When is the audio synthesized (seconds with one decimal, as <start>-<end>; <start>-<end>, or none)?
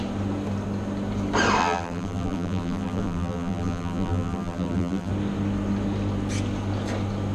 1.6-5.1